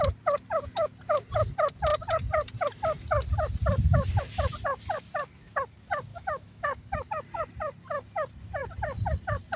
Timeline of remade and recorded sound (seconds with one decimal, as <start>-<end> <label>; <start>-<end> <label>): 0.0-6.1 recorded; 6.1-7.1 remade; 7.1-9.6 recorded

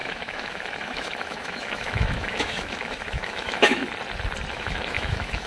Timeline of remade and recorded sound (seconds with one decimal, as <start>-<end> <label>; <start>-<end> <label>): 0.0-3.8 remade; 3.8-4.5 recorded; 4.5-5.5 remade

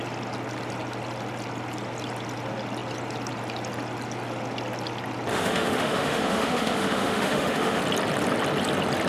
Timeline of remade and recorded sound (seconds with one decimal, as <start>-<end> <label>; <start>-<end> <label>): 0.0-5.3 recorded; 5.3-7.8 remade; 7.8-9.1 recorded